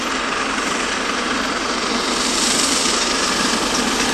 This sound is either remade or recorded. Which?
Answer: remade